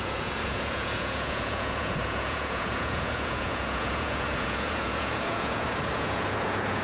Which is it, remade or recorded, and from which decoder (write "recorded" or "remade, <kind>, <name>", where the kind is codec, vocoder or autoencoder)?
remade, vocoder, Vocos